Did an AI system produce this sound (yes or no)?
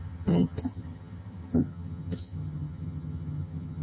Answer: yes